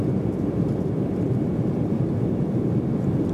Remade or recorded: recorded